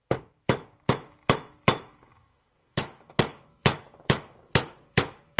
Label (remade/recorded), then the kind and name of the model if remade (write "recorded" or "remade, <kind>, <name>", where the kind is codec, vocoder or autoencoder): remade, autoencoder, DAC-VAE